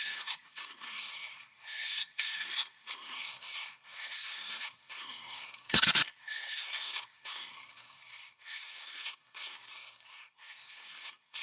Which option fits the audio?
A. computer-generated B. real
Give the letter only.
A